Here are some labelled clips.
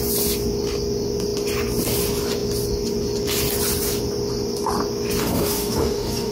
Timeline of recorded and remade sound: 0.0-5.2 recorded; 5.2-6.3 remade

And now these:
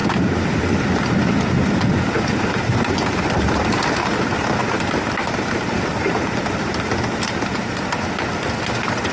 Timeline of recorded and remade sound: 0.0-0.6 remade; 0.6-2.3 recorded; 2.3-3.6 remade; 3.6-4.6 recorded; 4.6-7.0 remade; 7.0-9.1 recorded

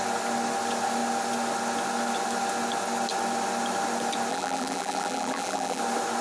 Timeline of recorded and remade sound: 0.0-4.3 recorded; 4.3-5.8 remade; 5.8-6.2 recorded